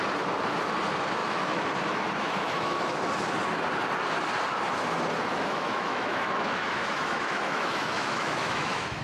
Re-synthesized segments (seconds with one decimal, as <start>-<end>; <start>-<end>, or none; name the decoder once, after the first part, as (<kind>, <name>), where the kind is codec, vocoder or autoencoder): 1.2-1.7 (autoencoder, DAC-VAE); 2.2-3.0; 5.3-9.0